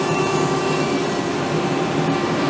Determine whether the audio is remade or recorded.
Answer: remade